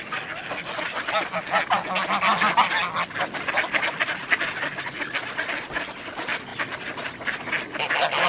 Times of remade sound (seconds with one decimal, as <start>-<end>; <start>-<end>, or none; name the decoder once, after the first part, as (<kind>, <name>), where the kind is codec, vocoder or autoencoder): none

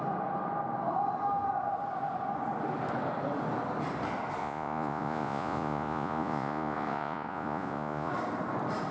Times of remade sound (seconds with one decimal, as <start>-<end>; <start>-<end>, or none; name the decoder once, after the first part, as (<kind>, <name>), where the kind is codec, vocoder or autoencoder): 4.4-8.1 (vocoder, Vocos)

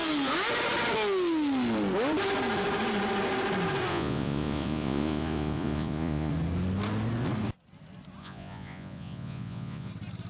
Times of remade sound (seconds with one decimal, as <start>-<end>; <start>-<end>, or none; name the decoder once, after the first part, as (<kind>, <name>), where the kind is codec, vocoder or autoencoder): 3.9-6.3 (vocoder, Vocos); 8.2-9.9

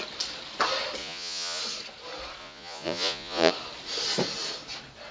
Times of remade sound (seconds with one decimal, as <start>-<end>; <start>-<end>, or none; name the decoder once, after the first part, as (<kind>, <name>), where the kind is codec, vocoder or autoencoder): 1.0-1.6 (vocoder, Vocos); 2.4-3.5

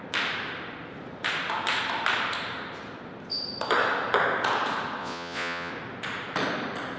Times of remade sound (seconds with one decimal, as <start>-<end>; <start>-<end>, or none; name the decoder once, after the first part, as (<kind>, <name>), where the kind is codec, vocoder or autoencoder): 5.0-5.7 (vocoder, Vocos)

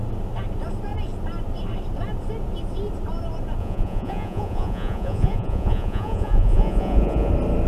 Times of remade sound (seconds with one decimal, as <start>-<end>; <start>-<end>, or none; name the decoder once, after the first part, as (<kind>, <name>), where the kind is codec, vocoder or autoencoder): 3.6-7.3 (vocoder, Vocos)

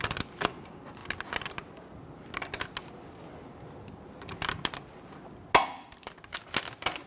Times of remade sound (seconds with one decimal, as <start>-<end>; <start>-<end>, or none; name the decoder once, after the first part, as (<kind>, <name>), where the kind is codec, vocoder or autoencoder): none

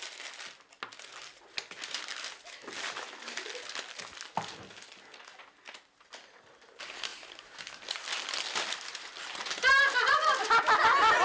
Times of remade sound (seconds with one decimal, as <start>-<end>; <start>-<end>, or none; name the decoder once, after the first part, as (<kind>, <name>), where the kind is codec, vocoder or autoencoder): none